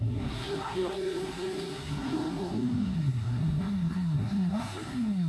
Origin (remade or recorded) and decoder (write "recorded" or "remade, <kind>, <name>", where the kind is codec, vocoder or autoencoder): remade, codec, SNAC